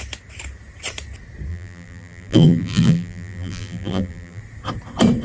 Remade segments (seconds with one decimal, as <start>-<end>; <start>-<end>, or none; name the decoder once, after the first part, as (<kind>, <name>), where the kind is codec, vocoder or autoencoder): 1.5-4.4 (vocoder, BigVGAN v2)